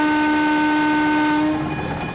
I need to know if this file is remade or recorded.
recorded